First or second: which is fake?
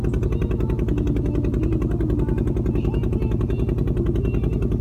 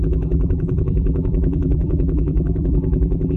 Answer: second